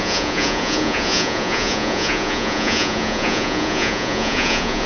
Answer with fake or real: fake